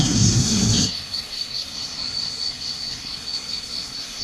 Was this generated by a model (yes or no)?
yes